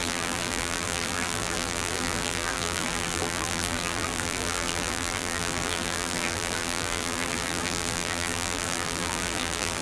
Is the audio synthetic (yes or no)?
yes